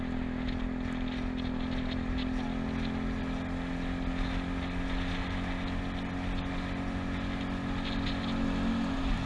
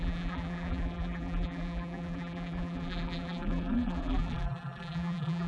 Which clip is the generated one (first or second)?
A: second